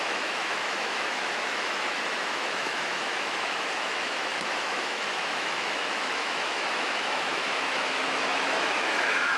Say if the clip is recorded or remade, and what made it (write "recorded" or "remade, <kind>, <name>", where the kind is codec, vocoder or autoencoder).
remade, autoencoder, DAC-VAE